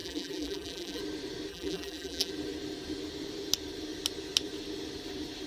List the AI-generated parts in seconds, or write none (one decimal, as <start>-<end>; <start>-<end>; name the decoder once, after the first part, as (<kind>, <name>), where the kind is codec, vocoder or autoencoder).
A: 0.0-1.0 (vocoder, BigVGAN v2); 1.5-2.3